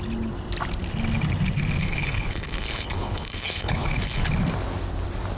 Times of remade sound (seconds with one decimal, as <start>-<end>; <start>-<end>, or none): 1.8-4.0